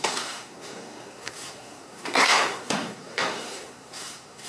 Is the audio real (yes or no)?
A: no